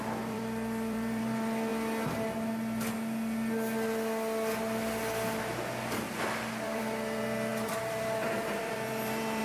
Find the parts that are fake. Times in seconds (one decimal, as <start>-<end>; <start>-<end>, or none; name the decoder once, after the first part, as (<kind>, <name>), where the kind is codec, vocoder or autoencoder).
0.0-1.7 (vocoder, BigVGAN v2); 6.2-9.4